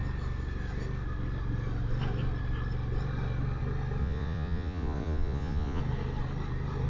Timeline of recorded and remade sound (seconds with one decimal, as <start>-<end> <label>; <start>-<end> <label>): 0.0-4.0 recorded; 4.0-5.8 remade; 5.8-6.9 recorded